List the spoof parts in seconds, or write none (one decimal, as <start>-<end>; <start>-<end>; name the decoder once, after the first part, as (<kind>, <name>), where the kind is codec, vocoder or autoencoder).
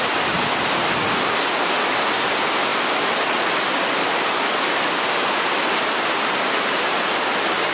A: none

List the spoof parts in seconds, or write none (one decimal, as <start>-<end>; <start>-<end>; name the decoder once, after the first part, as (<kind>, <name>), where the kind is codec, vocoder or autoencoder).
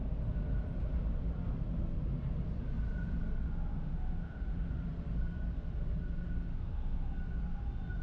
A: 3.7-4.7 (autoencoder, DAC-VAE); 6.5-7.1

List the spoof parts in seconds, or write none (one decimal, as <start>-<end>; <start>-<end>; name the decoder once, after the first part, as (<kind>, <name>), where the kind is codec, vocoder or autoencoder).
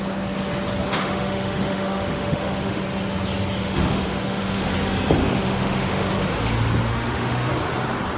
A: 0.9-2.8 (autoencoder, DAC-VAE); 3.6-4.7; 5.2-6.1; 6.9-7.5